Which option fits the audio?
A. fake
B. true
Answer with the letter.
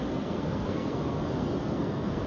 A